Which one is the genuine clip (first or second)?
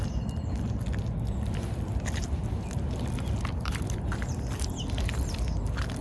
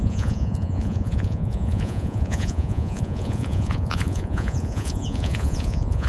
first